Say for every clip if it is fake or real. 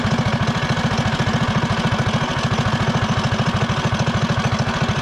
real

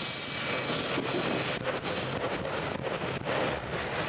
real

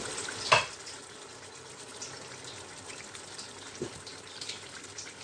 real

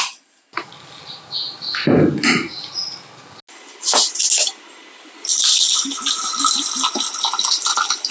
real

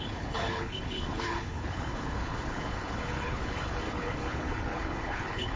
fake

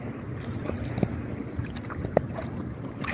real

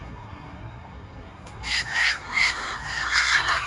fake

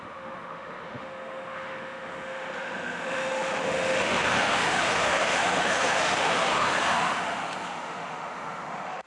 fake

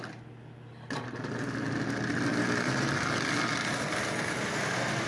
real